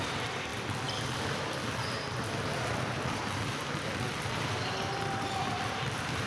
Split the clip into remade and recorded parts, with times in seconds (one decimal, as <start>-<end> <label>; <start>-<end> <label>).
0.0-6.3 recorded